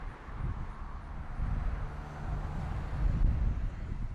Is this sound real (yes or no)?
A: yes